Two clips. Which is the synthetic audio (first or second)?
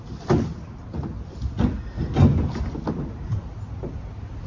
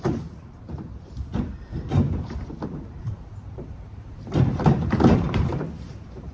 second